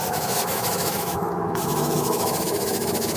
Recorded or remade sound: remade